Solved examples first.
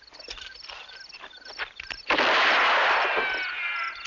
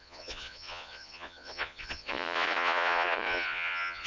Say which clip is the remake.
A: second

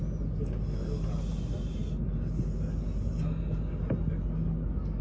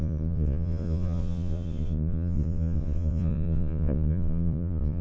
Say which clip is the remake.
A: second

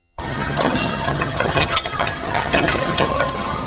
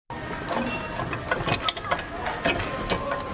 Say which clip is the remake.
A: first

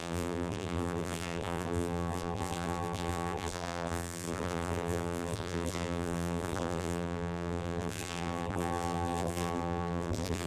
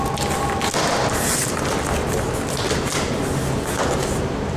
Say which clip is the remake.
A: first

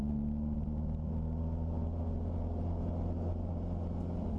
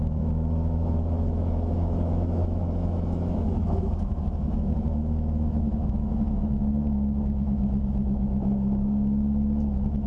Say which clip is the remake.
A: second